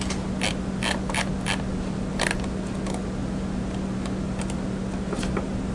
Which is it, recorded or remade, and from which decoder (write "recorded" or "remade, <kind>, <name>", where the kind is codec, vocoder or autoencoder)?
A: recorded